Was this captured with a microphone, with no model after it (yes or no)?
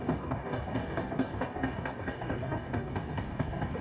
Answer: no